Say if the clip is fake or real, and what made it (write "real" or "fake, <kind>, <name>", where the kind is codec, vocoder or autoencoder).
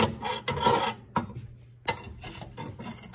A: real